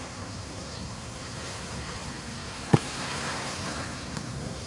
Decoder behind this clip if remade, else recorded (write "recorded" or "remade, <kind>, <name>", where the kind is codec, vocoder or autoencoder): remade, codec, SNAC